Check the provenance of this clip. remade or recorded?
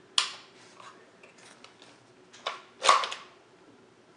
recorded